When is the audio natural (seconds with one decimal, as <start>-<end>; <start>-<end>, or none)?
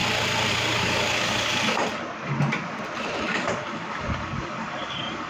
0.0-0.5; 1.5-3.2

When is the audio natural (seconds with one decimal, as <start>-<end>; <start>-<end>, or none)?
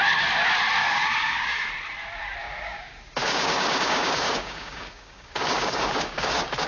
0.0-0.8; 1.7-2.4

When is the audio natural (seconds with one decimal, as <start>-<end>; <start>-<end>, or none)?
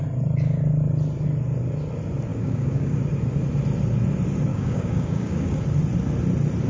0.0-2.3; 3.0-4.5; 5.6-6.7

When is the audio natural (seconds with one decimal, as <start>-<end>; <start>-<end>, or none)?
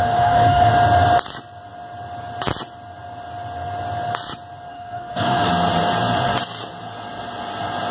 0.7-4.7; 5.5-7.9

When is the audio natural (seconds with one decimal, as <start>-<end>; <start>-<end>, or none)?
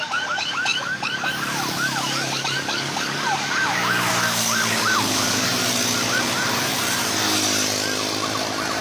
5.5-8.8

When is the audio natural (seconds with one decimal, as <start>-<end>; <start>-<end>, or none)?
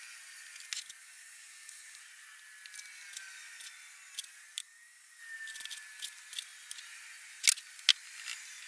0.0-1.0; 2.0-4.6; 5.2-8.7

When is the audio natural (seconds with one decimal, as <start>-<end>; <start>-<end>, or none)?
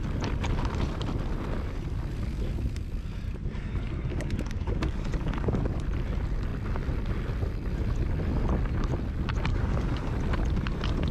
0.0-4.1; 5.6-9.5; 10.1-11.1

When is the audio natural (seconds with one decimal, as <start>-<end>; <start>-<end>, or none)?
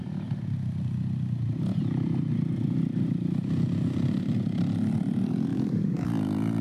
0.0-5.5; 6.1-6.6